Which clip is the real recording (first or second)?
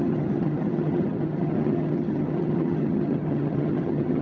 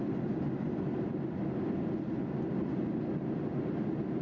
second